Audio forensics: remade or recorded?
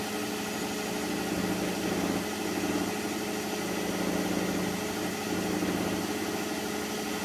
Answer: recorded